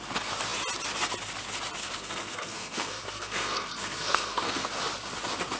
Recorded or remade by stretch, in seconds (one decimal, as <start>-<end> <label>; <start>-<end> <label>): 0.0-1.8 recorded; 1.8-4.7 remade; 4.7-5.6 recorded